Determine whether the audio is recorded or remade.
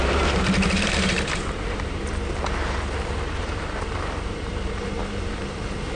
remade